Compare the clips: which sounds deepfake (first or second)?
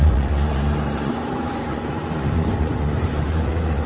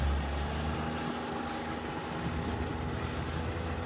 first